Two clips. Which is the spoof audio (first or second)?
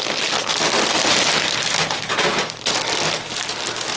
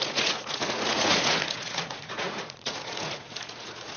second